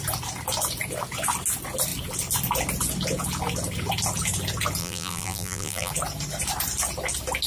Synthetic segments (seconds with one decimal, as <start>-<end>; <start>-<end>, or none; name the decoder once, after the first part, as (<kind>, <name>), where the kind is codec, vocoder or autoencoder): 4.8-5.9 (vocoder, BigVGAN v2)